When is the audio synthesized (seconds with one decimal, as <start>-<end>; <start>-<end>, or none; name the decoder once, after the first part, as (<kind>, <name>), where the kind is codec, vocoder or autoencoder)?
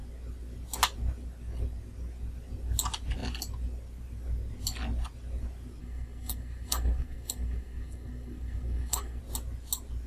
5.8-9.2 (codec, SNAC)